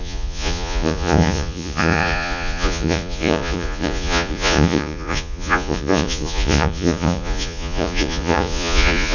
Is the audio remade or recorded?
remade